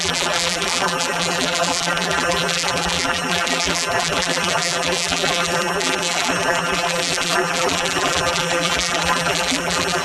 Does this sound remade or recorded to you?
remade